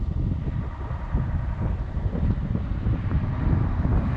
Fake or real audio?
real